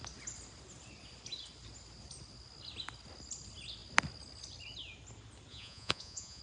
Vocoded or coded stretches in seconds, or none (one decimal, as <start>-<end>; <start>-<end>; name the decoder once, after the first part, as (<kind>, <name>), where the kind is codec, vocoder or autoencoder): 5.5-6.4 (vocoder, Vocos)